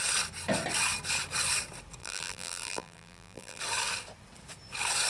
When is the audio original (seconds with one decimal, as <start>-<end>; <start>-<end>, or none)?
0.0-2.0; 3.6-5.1